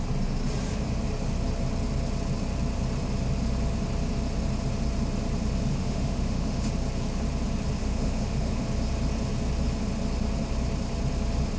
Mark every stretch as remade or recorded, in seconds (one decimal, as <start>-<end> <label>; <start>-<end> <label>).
0.0-5.7 recorded; 5.7-6.7 remade; 6.7-7.8 recorded; 7.8-8.6 remade; 8.6-11.6 recorded